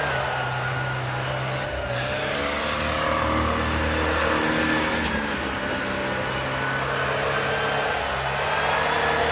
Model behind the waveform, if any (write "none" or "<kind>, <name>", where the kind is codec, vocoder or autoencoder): none